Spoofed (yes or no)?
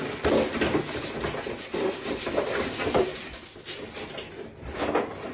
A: no